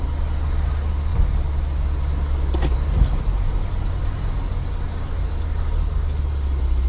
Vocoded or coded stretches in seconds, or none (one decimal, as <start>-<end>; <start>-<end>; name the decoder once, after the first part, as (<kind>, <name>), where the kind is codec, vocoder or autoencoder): none